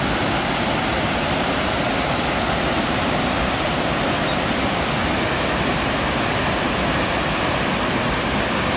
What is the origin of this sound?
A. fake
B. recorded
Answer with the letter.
B